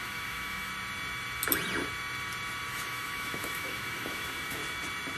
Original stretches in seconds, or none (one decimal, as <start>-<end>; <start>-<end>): 0.7-2.7; 4.6-5.2